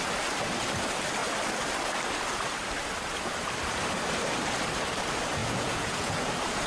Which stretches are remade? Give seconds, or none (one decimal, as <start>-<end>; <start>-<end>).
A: 5.4-6.3